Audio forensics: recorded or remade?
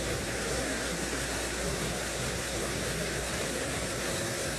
remade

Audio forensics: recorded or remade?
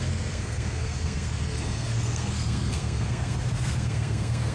remade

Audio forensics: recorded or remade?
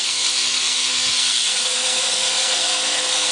remade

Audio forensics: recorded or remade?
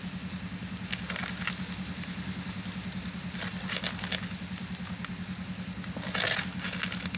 recorded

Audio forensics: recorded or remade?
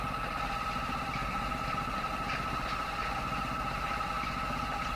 recorded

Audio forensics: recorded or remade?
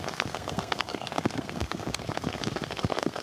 remade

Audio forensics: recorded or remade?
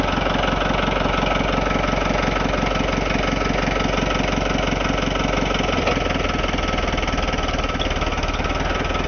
recorded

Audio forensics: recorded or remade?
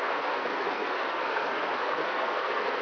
remade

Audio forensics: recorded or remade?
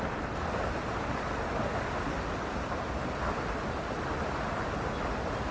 recorded